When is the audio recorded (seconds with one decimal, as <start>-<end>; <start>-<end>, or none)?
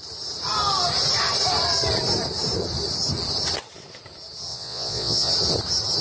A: 0.0-4.5; 5.3-6.0